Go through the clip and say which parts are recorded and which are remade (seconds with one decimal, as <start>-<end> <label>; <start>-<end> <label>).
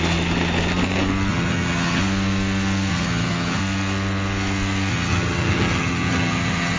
0.0-1.3 recorded; 1.3-2.0 remade; 2.0-2.9 recorded; 2.9-3.6 remade; 3.6-4.9 recorded; 4.9-6.8 remade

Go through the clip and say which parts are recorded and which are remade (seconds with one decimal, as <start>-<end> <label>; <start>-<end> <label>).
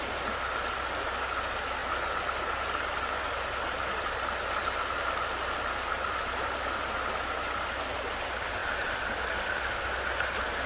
0.0-10.7 recorded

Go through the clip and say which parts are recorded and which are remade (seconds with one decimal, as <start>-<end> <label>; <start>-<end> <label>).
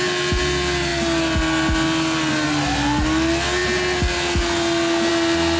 0.0-5.6 recorded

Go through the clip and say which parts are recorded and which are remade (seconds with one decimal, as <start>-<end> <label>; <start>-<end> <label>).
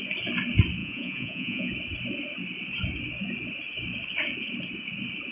0.0-0.8 recorded; 0.8-1.7 remade; 1.7-5.3 recorded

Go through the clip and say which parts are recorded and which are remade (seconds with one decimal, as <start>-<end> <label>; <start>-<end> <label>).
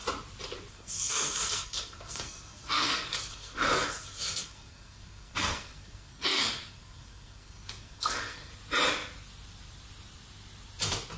0.0-0.7 recorded; 0.7-8.5 remade; 8.5-11.2 recorded